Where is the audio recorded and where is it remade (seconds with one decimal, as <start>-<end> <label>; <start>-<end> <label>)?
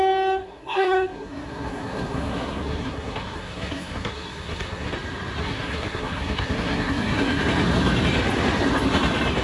0.0-0.4 recorded; 0.4-4.9 remade; 4.9-5.4 recorded; 5.4-7.4 remade; 7.4-9.4 recorded